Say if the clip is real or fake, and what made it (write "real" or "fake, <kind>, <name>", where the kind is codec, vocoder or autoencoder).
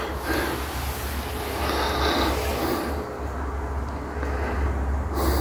real